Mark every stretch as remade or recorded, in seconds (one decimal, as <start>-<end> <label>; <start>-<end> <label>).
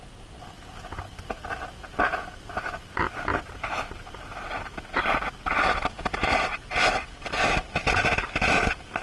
0.0-9.0 recorded